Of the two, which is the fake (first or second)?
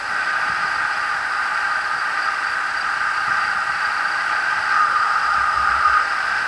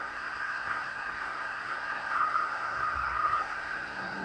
second